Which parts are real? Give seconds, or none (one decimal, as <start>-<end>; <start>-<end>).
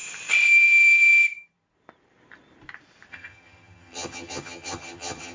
0.0-3.1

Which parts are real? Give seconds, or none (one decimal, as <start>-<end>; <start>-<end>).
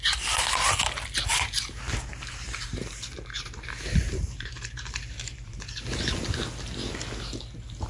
0.0-1.3; 6.0-7.9